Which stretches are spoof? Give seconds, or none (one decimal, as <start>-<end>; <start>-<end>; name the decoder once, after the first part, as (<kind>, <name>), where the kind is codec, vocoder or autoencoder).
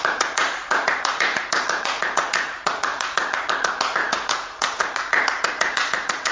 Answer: 0.0-6.3 (vocoder, Vocos)